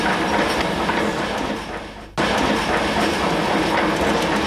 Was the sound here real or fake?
real